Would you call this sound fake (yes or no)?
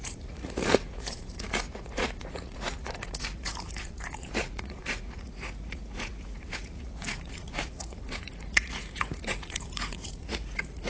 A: yes